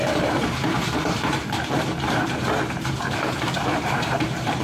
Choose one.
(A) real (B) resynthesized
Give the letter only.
B